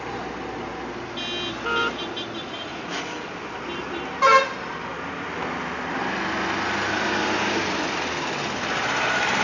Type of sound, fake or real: real